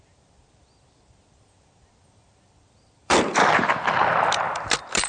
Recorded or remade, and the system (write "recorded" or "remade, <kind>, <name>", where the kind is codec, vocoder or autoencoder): remade, vocoder, BigVGAN v2